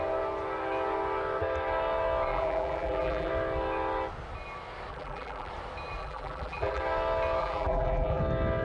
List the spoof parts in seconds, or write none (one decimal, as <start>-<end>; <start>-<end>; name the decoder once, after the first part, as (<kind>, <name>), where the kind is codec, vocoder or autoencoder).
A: 2.3-3.3 (vocoder, BigVGAN v2); 4.9-5.5; 6.0-6.8; 7.4-8.2